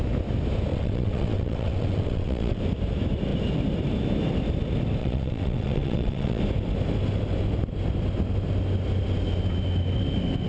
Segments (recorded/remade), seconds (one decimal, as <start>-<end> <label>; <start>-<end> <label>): 0.0-0.7 recorded; 0.7-2.6 remade; 2.6-5.0 recorded; 5.0-6.4 remade; 6.4-10.5 recorded